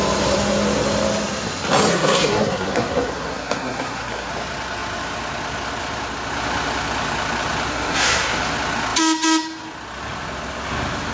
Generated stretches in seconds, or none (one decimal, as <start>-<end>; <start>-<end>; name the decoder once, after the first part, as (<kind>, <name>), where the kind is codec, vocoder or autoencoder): 1.9-4.3 (codec, SNAC); 7.7-8.4